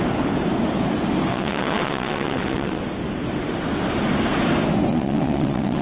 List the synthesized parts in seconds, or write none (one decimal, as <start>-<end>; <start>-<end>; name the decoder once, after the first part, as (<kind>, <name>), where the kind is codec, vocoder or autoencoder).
1.3-2.8 (vocoder, WaveNeXt); 4.9-5.8